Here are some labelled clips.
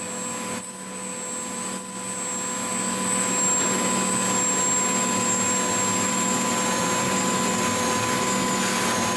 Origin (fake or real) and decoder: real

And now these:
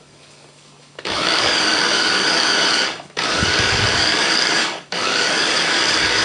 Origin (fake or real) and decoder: fake, codec, DAC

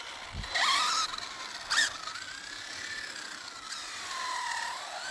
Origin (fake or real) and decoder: real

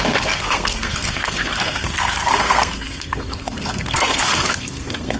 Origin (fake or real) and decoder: fake, codec, SNAC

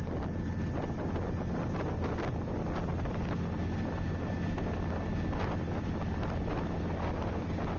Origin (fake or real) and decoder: real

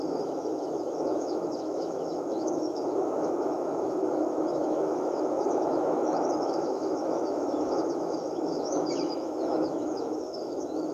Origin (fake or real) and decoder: fake, autoencoder, DAC-VAE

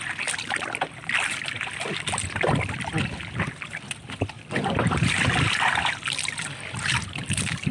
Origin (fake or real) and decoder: real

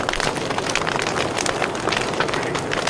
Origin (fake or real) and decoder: real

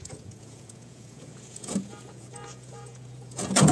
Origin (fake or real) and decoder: fake, vocoder, Vocos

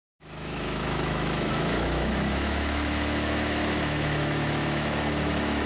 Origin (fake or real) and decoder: fake, autoencoder, DAC-VAE